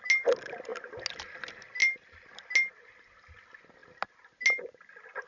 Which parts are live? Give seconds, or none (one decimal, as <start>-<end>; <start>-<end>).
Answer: 0.0-5.3